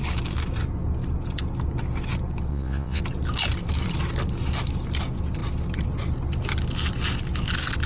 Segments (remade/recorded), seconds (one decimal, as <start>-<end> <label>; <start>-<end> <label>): 0.0-2.5 recorded; 2.5-3.0 remade; 3.0-7.9 recorded